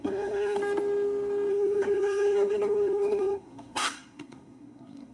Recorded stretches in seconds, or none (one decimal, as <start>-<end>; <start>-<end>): 0.6-1.5